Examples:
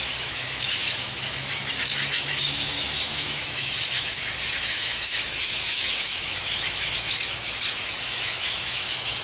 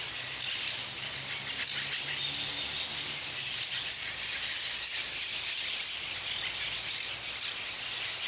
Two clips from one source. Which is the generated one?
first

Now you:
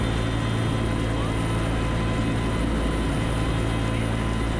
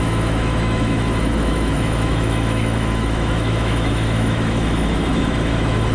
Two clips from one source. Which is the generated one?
second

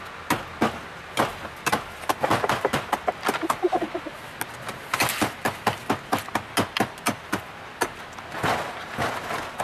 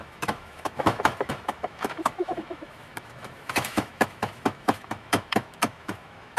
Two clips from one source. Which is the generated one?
second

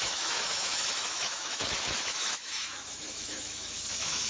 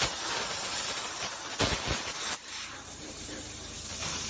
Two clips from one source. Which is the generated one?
first